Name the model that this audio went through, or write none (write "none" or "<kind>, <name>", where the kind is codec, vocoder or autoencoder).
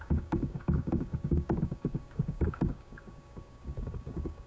codec, DAC